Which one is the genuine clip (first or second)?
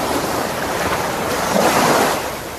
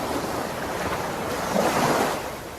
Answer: second